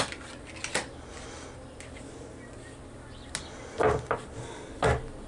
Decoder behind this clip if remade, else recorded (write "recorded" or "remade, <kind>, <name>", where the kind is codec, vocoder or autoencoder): recorded